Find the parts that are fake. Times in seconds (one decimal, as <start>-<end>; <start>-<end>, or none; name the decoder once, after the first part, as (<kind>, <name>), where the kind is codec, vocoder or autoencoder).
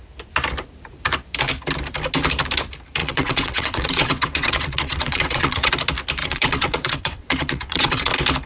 3.0-5.7 (vocoder, WaveNeXt); 6.2-8.1